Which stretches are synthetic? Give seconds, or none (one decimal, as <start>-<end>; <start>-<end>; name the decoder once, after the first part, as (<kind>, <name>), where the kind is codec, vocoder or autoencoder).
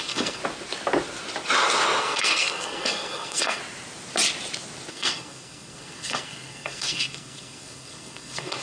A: 0.0-0.4 (codec, SNAC); 2.0-3.6; 4.9-8.6